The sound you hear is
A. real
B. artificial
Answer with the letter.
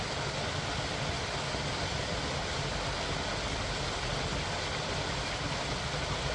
A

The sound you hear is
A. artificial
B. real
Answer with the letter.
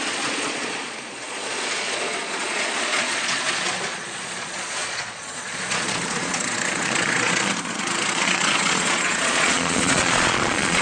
A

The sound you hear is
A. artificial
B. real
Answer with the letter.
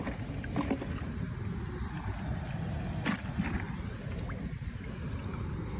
B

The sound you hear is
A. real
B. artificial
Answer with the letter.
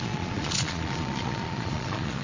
B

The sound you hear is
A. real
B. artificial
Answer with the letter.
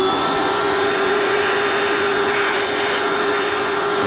B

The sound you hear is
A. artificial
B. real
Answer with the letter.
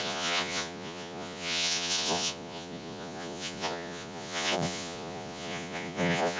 A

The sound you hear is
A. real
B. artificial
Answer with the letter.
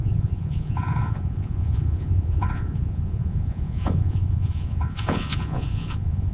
B